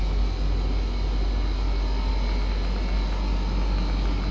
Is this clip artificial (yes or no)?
no